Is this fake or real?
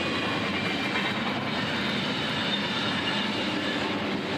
real